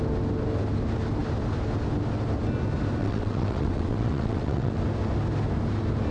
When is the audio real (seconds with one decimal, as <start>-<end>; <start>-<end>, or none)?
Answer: 0.0-3.0; 4.8-6.1